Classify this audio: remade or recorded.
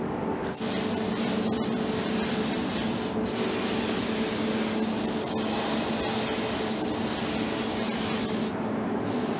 recorded